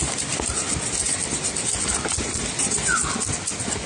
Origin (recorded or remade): recorded